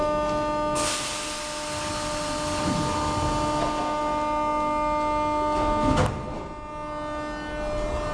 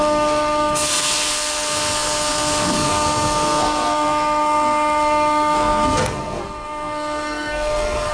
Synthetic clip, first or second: second